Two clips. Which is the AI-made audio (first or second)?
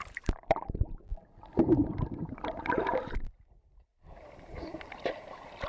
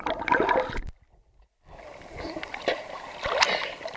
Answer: first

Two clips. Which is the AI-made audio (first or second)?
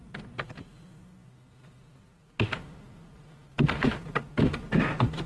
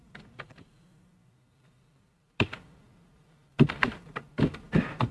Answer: second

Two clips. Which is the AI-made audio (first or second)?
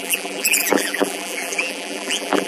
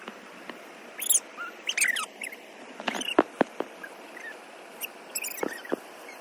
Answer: first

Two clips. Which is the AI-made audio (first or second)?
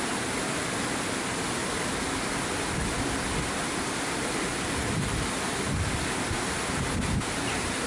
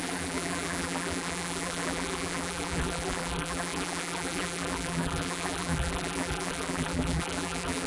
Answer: second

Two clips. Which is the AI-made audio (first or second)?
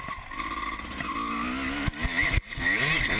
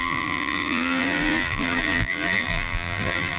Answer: second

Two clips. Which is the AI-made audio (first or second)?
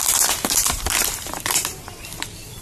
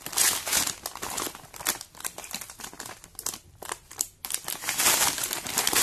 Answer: first